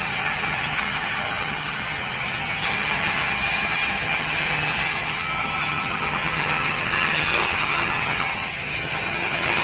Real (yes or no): no